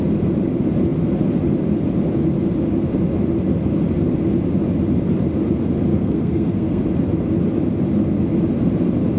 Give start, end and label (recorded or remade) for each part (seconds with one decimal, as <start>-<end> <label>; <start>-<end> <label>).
0.0-5.9 recorded; 5.9-6.8 remade; 6.8-9.2 recorded